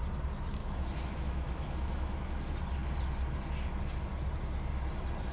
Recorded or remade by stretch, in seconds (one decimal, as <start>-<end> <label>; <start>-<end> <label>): 0.0-0.6 recorded; 0.6-2.3 remade; 2.3-5.3 recorded